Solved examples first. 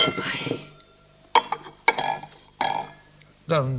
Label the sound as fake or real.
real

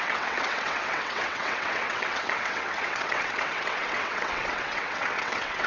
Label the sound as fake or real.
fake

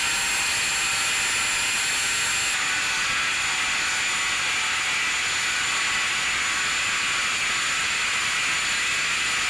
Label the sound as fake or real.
real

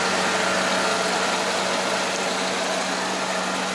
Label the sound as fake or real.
real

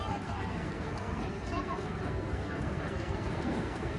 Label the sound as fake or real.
fake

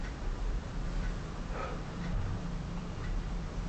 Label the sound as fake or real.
fake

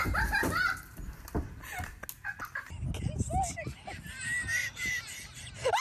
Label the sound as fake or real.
real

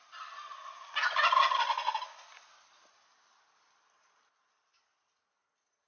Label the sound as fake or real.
real